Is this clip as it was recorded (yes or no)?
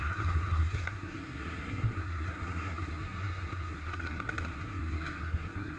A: no